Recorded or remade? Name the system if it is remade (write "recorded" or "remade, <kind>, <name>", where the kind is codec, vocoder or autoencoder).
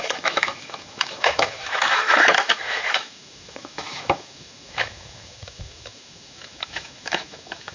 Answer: remade, autoencoder, DAC-VAE